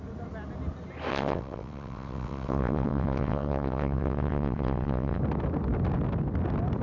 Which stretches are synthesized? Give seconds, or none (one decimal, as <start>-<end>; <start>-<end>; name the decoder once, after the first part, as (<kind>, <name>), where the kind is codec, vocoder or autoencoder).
1.1-5.2 (vocoder, WaveNeXt)